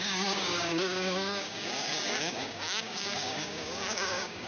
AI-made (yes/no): yes